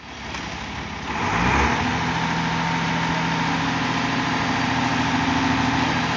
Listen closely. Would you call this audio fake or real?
real